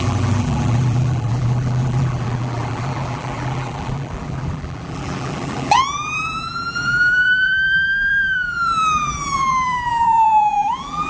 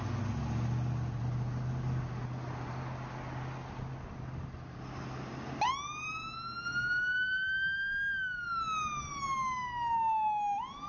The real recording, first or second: second